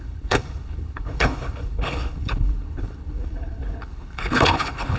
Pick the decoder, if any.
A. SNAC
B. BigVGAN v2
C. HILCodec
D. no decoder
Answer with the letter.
C